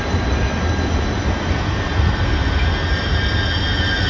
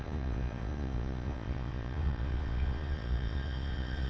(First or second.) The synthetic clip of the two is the second